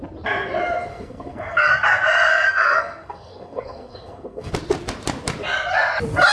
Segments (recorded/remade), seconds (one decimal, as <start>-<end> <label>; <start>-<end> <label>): 0.0-0.9 recorded; 0.9-1.7 remade; 1.7-2.3 recorded; 2.3-4.5 remade; 4.5-6.3 recorded